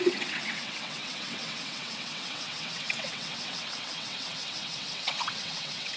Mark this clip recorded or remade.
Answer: remade